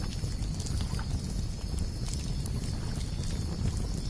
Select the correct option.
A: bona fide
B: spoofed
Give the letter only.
A